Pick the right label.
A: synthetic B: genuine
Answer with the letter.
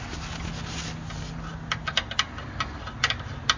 B